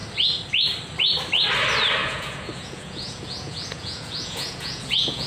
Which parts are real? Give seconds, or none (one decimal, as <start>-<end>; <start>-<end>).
0.0-2.0